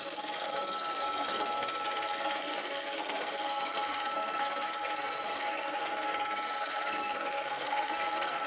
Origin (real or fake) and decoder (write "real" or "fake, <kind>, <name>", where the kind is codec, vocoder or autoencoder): fake, codec, SNAC